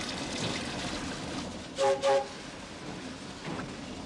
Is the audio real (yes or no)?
yes